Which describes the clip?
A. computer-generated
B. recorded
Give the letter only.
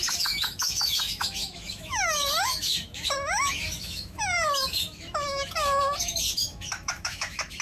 A